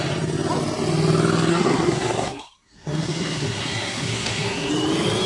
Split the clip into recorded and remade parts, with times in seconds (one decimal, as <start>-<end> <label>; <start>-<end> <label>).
0.0-1.5 recorded; 1.5-4.7 remade; 4.7-5.3 recorded